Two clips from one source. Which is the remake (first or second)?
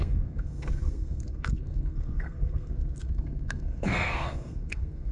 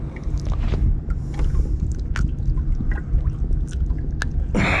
first